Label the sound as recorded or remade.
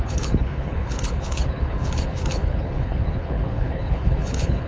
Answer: remade